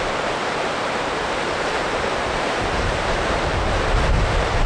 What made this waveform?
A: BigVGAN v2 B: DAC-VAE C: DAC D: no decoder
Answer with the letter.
A